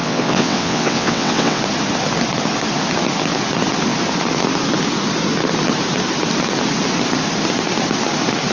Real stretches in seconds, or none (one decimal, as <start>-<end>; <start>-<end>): 1.6-8.5